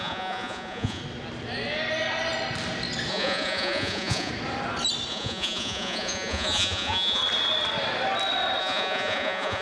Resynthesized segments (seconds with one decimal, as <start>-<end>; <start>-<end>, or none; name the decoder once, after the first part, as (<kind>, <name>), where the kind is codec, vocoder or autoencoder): 0.0-1.0 (vocoder, Vocos); 3.1-4.3; 5.1-7.2; 8.6-9.6